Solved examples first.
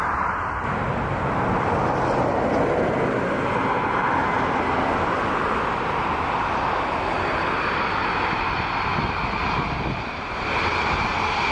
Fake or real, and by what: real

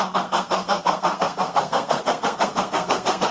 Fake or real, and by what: fake, codec, SNAC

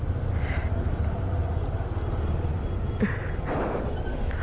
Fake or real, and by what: real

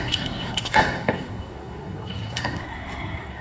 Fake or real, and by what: fake, codec, SNAC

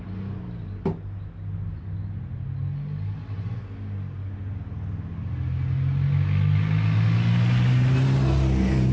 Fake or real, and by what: real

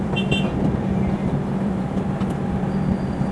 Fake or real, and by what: real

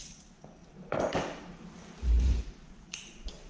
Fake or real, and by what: real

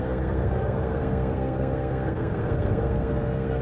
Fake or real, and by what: fake, codec, SNAC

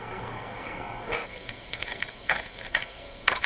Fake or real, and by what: fake, codec, SNAC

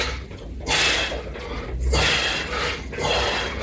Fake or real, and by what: real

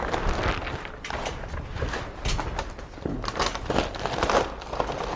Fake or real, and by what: real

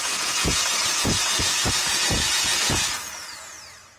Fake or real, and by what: fake, vocoder, Vocos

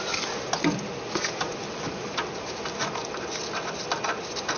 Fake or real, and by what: real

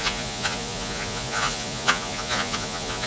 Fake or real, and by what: fake, vocoder, Vocos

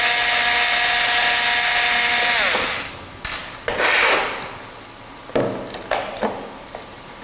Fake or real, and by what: real